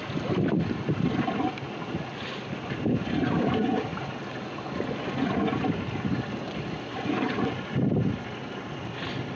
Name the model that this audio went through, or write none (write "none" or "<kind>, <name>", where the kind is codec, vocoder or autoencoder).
none